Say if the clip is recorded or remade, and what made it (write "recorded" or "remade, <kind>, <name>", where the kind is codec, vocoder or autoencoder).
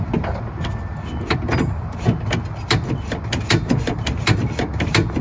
recorded